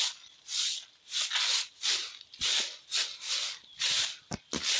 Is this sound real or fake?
real